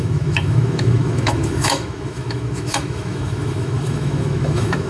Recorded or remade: remade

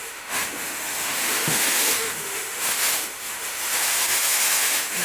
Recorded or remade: remade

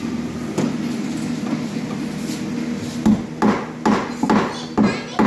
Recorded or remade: recorded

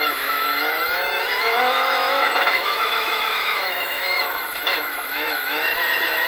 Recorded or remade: remade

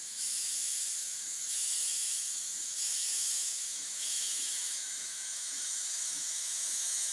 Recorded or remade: remade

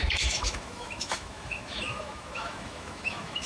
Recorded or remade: remade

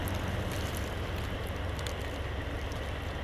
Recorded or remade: recorded